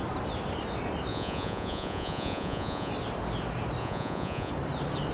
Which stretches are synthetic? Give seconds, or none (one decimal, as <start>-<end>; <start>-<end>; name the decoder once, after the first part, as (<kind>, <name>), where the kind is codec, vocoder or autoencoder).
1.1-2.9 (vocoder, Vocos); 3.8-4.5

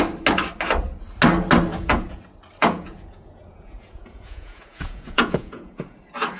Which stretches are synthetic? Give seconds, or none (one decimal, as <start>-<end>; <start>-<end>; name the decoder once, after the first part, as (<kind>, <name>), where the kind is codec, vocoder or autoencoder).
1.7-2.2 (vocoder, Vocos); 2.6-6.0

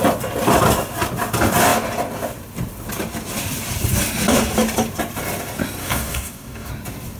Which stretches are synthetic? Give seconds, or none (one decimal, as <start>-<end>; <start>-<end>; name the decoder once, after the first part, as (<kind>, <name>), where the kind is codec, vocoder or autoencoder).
5.8-6.7 (codec, DAC)

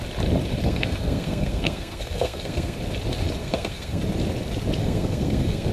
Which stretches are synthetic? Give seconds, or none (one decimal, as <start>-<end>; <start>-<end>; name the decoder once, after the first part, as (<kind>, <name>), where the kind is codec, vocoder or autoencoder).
0.6-2.8 (codec, SNAC); 3.4-4.0; 4.8-5.7

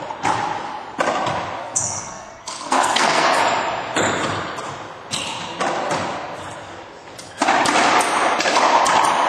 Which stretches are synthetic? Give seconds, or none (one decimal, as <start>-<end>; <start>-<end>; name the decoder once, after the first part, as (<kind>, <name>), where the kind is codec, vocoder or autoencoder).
1.6-3.4 (codec, SNAC)